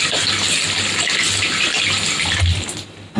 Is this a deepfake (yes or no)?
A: no